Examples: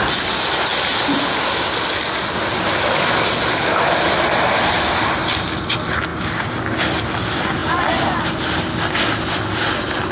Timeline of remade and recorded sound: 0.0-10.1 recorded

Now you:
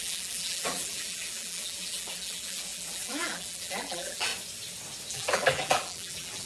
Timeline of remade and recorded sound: 0.0-4.3 remade; 4.3-5.1 recorded; 5.1-6.5 remade